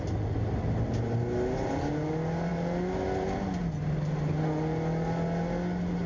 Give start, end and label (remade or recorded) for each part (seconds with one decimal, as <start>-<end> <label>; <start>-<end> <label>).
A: 0.0-6.1 recorded